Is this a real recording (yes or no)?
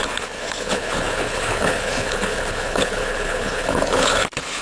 no